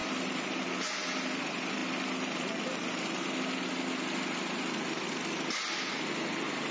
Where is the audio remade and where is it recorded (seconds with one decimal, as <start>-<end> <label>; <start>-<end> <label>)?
0.0-6.7 recorded